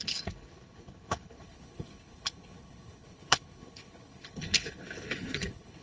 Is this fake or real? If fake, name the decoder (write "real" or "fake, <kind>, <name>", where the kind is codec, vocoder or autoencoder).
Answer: fake, codec, HILCodec